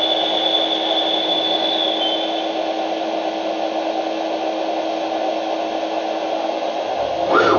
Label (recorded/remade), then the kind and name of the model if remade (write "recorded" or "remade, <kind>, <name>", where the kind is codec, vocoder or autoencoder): recorded